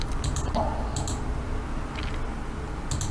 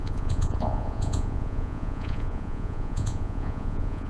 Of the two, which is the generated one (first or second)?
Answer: second